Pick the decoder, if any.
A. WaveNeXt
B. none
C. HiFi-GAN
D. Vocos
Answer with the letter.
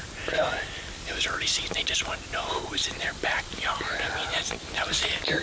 B